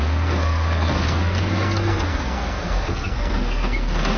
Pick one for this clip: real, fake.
fake